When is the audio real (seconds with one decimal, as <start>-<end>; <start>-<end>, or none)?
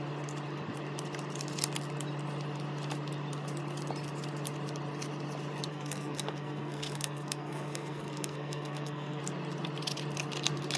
0.0-5.7; 9.2-10.8